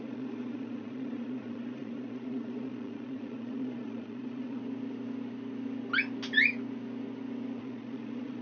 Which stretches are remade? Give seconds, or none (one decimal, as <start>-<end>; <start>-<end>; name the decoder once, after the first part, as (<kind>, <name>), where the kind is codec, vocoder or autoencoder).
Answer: 0.0-4.6 (vocoder, Vocos); 7.6-8.4